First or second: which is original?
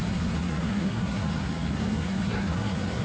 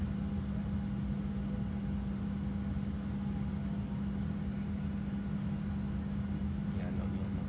second